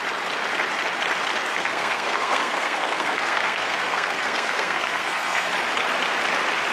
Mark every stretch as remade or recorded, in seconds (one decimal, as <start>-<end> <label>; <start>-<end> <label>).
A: 0.0-1.5 recorded; 1.5-5.5 remade; 5.5-6.7 recorded